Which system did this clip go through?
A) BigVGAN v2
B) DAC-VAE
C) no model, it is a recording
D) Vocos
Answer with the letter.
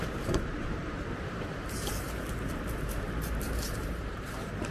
A